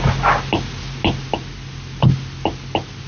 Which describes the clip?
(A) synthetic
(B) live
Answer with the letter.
B